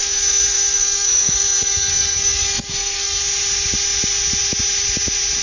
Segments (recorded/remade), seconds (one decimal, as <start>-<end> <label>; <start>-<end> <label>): 0.0-3.2 remade; 3.2-5.4 recorded